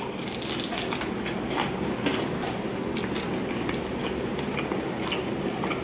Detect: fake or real real